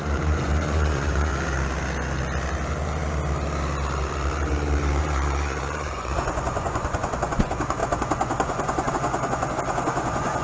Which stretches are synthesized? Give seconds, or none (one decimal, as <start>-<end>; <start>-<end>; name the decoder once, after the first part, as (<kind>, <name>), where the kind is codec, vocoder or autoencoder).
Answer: 0.0-1.3 (vocoder, Vocos); 5.0-10.4